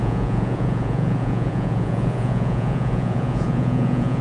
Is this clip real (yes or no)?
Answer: no